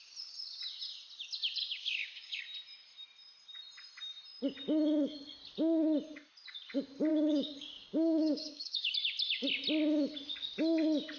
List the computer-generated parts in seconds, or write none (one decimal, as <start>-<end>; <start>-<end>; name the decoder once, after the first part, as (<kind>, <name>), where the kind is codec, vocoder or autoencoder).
1.6-2.4 (codec, DAC); 7.1-8.9